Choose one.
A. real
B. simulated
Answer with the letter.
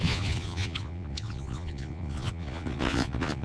B